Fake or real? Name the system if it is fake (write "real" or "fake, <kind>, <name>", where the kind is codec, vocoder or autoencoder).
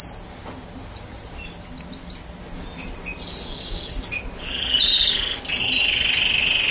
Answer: real